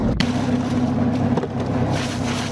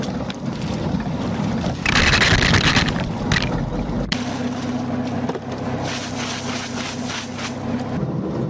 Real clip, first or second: second